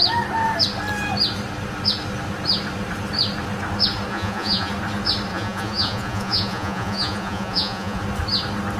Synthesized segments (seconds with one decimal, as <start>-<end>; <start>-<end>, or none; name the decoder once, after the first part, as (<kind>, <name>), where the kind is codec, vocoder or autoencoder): 4.1-4.7 (vocoder, Vocos); 5.3-8.0